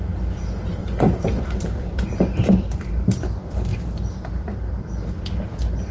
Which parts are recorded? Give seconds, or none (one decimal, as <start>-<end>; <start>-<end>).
0.0-0.8; 2.9-5.9